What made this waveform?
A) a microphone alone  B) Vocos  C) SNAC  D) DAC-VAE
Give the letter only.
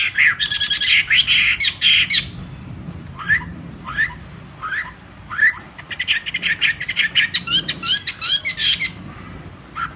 A